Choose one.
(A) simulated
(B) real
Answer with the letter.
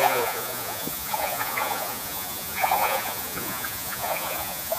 A